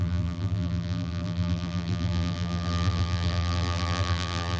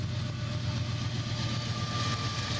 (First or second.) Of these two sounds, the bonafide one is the second